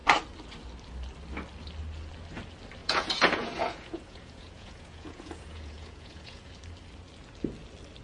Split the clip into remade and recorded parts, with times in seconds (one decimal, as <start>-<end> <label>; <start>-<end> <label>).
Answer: 0.0-2.8 recorded; 2.8-6.5 remade; 6.5-8.0 recorded